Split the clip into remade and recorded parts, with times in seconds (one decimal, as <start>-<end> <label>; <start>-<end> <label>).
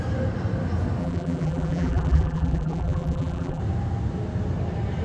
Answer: 0.0-1.0 recorded; 1.0-3.6 remade; 3.6-5.0 recorded